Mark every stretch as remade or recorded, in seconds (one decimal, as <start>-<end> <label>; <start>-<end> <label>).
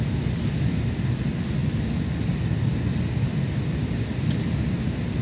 0.0-5.2 recorded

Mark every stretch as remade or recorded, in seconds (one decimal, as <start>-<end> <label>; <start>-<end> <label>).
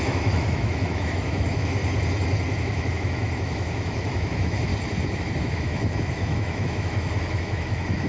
0.0-1.8 remade; 1.8-2.9 recorded; 2.9-4.7 remade; 4.7-5.4 recorded; 5.4-8.1 remade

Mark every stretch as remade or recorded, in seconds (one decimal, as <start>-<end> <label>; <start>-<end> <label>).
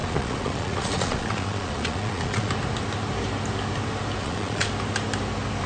0.0-2.5 remade; 2.5-4.2 recorded; 4.2-4.7 remade; 4.7-5.7 recorded